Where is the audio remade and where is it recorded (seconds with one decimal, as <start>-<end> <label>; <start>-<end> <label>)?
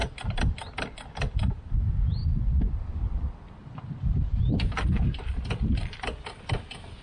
0.0-1.7 remade; 1.7-2.2 recorded; 2.2-6.4 remade; 6.4-7.0 recorded